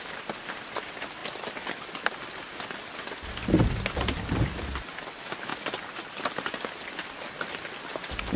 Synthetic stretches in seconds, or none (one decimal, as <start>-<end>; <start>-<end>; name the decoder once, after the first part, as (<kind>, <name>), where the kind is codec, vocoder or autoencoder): none